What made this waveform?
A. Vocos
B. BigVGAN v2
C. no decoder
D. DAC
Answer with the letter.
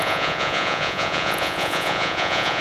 A